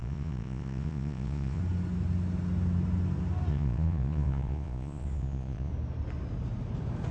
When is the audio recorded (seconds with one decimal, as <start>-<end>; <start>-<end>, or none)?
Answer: 1.6-3.5; 5.7-7.1